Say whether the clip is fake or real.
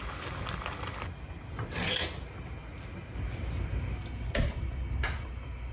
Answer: real